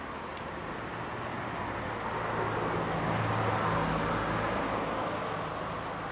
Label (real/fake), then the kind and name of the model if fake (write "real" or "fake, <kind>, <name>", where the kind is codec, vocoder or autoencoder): real